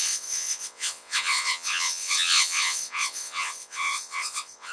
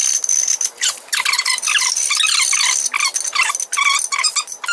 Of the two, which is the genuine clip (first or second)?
second